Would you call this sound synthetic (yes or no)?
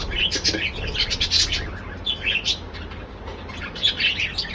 no